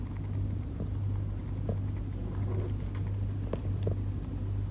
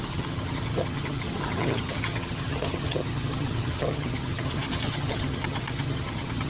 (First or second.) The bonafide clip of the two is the first